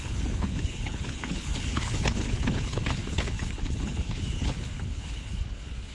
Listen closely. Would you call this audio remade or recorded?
remade